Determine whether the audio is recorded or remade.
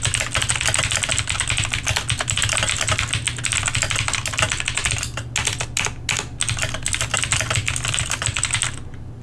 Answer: recorded